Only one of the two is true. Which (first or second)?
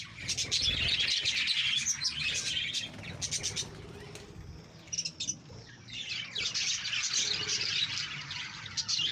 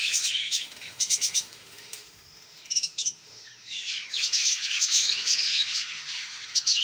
first